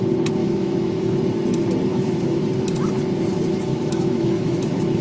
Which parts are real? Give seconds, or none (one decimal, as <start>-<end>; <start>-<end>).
0.0-0.4; 1.2-1.9; 2.4-3.7